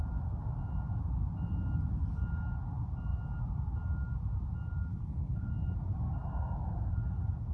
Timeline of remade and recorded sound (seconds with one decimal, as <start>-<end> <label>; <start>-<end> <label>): 0.0-4.9 recorded; 4.9-5.5 remade; 5.5-7.5 recorded